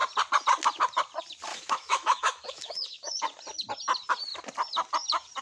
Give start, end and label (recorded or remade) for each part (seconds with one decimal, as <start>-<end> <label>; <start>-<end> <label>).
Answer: 0.0-1.5 recorded; 1.5-3.2 remade; 3.2-5.4 recorded

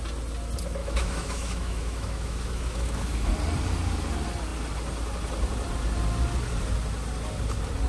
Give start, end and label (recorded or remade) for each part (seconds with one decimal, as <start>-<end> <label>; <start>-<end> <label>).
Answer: 0.0-0.8 recorded; 0.8-3.3 remade; 3.3-7.9 recorded